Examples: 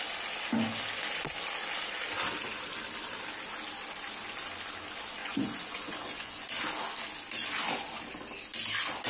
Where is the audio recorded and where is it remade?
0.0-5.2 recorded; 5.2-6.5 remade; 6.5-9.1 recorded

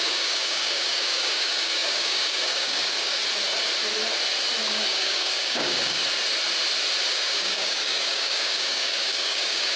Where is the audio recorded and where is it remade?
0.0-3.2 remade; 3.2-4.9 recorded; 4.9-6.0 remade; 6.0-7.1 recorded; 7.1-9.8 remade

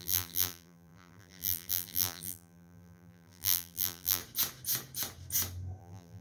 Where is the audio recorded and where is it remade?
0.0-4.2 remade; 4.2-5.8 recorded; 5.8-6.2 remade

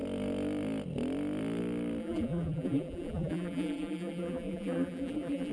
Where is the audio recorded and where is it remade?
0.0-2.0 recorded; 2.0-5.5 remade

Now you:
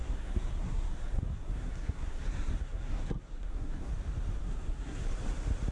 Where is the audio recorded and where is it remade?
0.0-3.9 remade; 3.9-4.4 recorded; 4.4-5.0 remade; 5.0-5.7 recorded

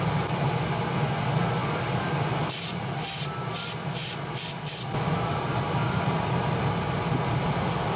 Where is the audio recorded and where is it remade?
0.0-1.6 recorded; 1.6-2.5 remade; 2.5-8.0 recorded

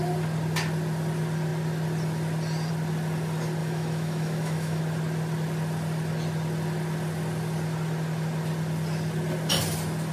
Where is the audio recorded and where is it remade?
0.0-3.6 recorded; 3.6-4.8 remade; 4.8-10.1 recorded

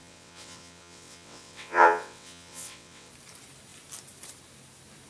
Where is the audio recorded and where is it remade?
0.0-3.1 remade; 3.1-5.1 recorded